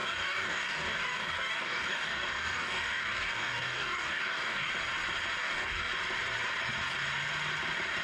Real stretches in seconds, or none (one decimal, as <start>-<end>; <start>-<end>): 4.7-5.4; 5.9-8.0